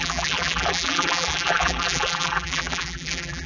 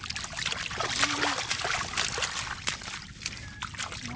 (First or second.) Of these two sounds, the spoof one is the first